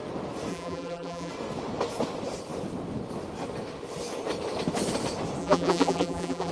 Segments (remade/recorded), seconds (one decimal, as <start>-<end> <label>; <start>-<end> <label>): 0.0-0.5 recorded; 0.5-1.3 remade; 1.3-5.4 recorded; 5.4-6.5 remade